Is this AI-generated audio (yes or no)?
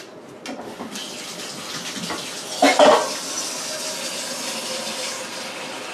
no